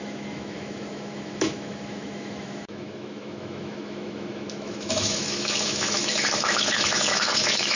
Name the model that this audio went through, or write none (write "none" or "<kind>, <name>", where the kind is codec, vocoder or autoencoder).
autoencoder, DAC-VAE